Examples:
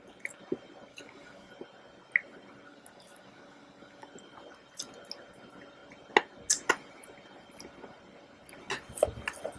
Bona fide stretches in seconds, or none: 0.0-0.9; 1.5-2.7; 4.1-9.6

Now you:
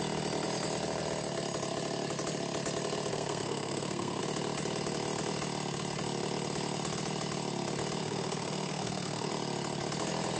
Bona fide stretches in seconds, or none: 0.0-3.1; 4.2-8.0; 9.3-10.4